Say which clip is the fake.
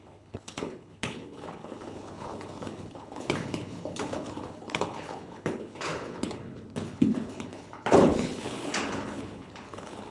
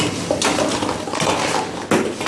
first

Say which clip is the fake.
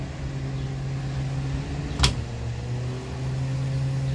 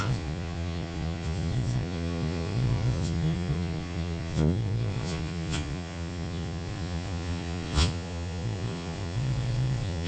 second